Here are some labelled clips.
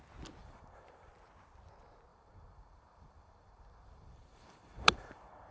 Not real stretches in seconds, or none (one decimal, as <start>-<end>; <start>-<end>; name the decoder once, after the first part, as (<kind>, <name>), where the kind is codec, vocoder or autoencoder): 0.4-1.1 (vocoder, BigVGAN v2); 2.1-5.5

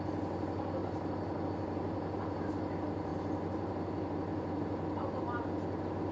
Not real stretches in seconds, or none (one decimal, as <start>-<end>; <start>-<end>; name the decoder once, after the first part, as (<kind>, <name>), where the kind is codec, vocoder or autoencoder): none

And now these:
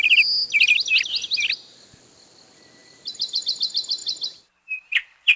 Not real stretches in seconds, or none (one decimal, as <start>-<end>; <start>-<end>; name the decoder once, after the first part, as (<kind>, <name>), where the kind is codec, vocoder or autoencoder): 2.8-3.4 (vocoder, BigVGAN v2); 4.0-4.5

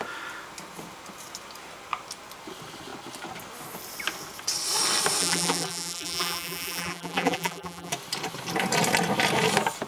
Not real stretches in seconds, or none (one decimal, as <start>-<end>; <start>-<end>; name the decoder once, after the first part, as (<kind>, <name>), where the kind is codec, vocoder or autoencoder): 5.2-7.9 (vocoder, BigVGAN v2)